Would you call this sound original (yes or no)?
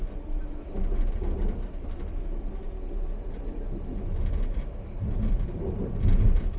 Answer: yes